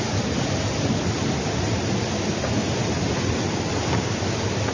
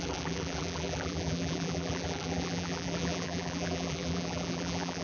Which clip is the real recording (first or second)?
first